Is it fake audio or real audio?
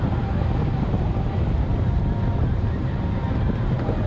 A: real